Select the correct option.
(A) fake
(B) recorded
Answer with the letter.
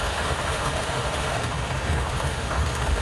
A